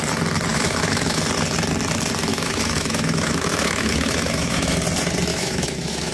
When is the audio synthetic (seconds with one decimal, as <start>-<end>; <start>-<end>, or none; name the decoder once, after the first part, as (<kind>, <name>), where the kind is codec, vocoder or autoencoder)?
0.5-1.2 (autoencoder, DAC-VAE); 2.3-4.7; 5.3-6.1